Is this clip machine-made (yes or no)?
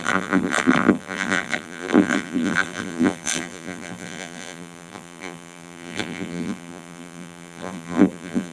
yes